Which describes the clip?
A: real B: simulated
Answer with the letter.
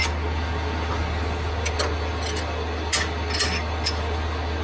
A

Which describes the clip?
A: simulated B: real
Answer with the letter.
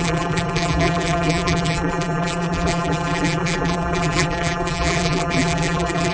A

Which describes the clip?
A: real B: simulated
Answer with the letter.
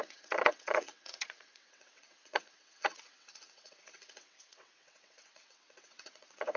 B